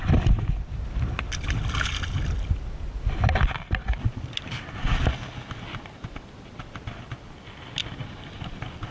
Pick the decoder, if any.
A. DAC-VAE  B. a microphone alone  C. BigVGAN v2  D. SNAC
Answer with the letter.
B